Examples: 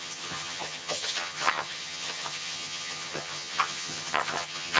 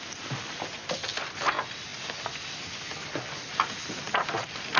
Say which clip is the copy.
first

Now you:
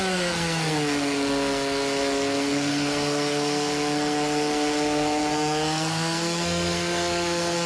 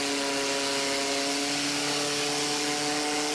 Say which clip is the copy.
first